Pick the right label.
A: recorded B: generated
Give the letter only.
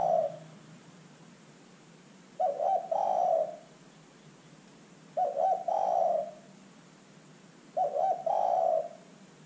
A